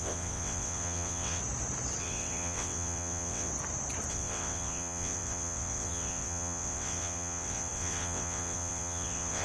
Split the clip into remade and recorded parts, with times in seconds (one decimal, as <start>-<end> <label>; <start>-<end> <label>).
0.0-1.4 remade; 1.4-2.0 recorded; 2.0-3.5 remade; 3.5-4.1 recorded; 4.1-9.4 remade